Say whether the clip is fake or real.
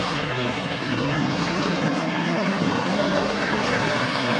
fake